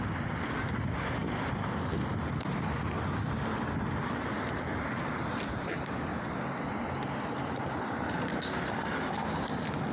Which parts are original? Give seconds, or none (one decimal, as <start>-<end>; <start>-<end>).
0.0-9.9